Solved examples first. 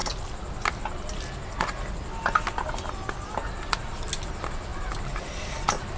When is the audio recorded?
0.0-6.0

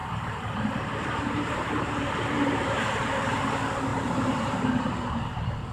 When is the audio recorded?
3.4-3.9; 4.9-5.7

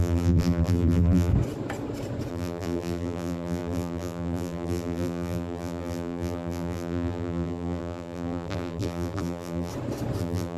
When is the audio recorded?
1.3-2.3; 9.7-10.2

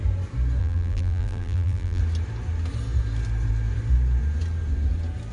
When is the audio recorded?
0.0-0.6; 2.0-5.3